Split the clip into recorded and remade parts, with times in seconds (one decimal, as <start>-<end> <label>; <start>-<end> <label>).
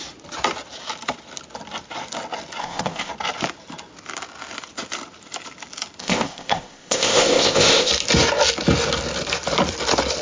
0.0-2.6 recorded; 2.6-3.1 remade; 3.1-6.0 recorded; 6.0-7.9 remade; 7.9-10.2 recorded